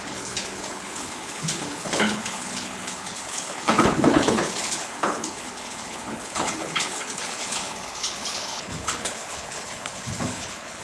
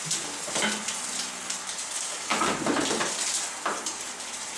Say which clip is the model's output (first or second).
first